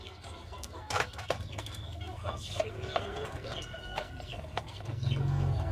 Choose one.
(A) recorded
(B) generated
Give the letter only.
B